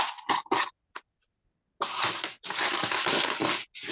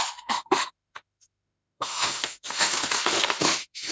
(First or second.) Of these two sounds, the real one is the first